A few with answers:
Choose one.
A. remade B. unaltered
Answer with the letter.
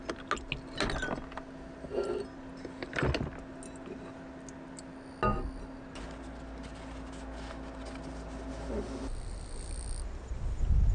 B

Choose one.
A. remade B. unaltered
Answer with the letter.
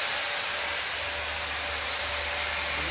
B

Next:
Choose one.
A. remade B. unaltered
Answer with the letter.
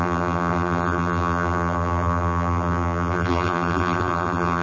A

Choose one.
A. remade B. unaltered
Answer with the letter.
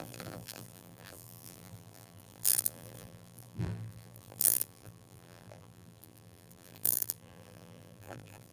A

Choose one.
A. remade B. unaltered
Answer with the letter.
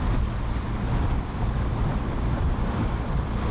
B